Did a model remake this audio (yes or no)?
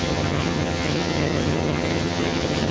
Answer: yes